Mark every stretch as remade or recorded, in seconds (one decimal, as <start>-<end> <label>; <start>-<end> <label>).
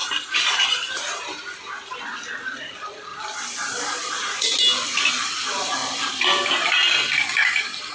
0.0-7.9 recorded